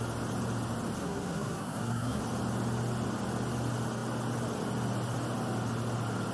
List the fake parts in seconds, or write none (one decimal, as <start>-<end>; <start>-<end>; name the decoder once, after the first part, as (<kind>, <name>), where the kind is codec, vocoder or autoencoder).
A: 1.0-2.2 (codec, SNAC)